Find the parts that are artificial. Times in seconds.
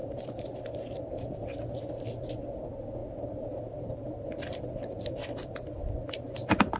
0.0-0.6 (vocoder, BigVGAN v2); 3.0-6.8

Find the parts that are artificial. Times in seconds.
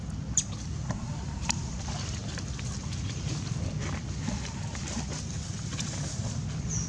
none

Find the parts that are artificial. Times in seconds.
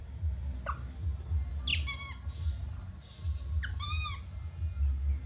none